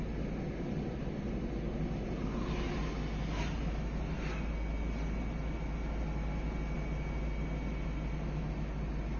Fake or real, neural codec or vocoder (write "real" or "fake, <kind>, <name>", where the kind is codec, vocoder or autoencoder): real